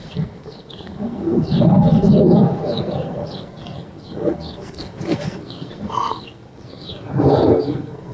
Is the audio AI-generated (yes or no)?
yes